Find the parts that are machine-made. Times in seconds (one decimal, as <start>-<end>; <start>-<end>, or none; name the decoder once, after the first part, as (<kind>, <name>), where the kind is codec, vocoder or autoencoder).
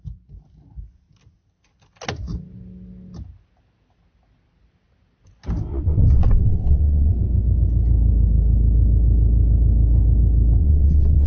5.7-7.1 (vocoder, WaveNeXt); 10.6-11.3